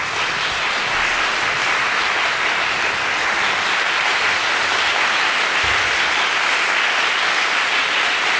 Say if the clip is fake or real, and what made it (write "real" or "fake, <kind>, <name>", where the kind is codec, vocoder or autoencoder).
real